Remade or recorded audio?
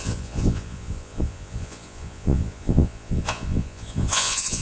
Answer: remade